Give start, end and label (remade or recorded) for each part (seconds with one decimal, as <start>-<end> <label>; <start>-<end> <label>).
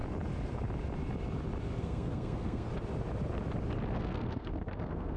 0.0-1.8 recorded; 1.8-2.7 remade; 2.7-4.0 recorded; 4.0-5.2 remade